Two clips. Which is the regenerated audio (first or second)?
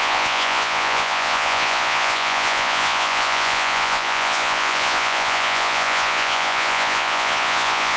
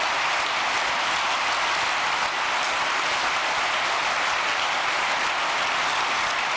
first